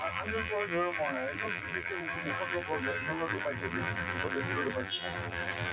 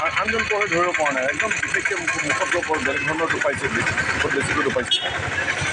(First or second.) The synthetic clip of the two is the first